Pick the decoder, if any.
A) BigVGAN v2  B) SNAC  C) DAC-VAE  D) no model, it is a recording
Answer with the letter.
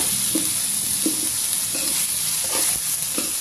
D